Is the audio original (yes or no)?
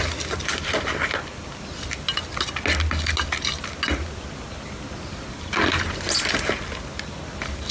yes